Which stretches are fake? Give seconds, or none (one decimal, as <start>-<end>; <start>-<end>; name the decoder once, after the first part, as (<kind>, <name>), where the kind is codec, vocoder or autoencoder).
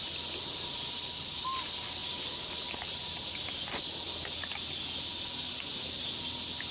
none